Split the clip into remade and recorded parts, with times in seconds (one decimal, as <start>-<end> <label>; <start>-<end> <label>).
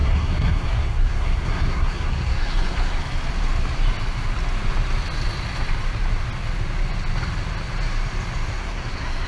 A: 0.0-3.0 remade; 3.0-8.6 recorded; 8.6-9.3 remade